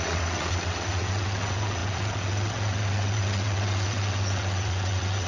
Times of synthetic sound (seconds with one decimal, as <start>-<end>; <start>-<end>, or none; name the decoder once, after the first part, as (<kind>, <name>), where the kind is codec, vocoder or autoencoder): 0.0-5.3 (vocoder, WaveNeXt)